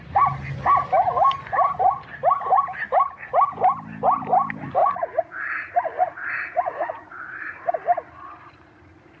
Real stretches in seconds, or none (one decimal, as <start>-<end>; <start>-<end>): 0.0-4.8; 7.7-9.2